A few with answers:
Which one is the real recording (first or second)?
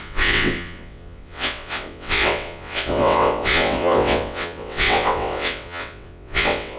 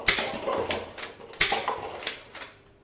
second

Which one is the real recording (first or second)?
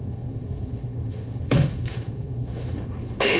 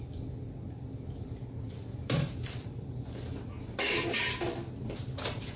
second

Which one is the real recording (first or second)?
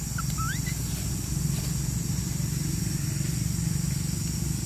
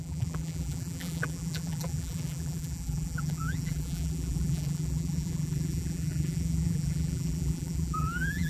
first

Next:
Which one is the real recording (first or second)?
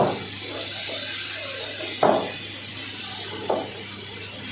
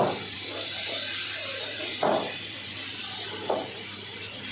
first